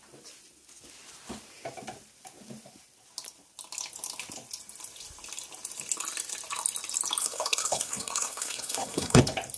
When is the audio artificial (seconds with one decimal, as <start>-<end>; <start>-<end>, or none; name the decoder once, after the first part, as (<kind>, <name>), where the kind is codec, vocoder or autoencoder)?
7.2-9.2 (codec, SNAC)